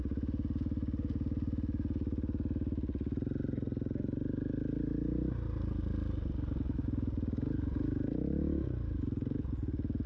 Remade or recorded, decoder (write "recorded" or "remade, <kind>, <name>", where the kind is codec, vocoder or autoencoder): recorded